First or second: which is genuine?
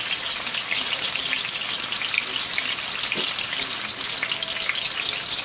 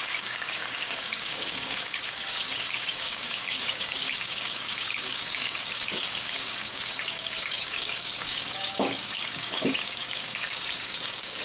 first